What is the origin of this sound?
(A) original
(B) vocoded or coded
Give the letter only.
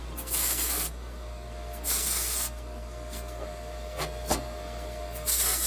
B